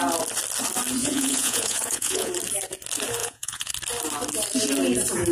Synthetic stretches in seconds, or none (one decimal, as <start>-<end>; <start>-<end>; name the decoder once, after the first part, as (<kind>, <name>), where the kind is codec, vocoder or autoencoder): 1.0-2.3 (vocoder, Vocos); 3.2-3.7